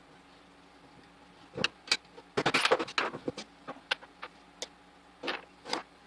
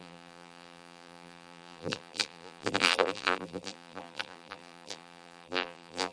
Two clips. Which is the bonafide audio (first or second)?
first